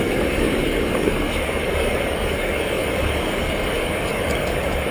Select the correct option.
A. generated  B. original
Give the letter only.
A